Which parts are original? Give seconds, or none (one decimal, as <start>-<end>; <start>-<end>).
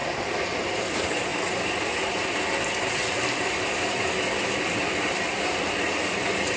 0.0-6.6